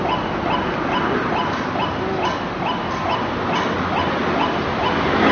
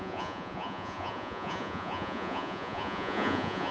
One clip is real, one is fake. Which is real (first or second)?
first